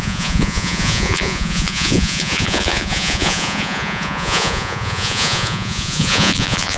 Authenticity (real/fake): fake